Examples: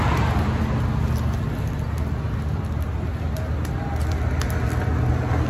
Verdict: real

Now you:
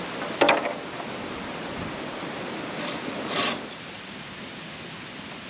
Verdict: real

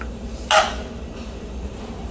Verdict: real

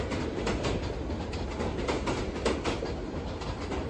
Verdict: real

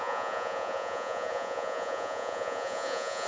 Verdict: fake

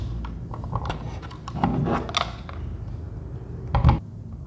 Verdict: real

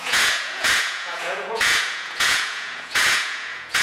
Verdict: fake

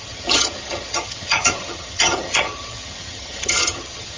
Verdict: fake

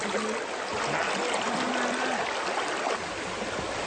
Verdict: real